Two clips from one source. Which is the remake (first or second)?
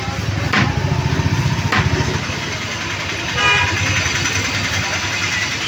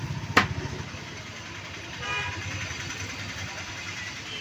second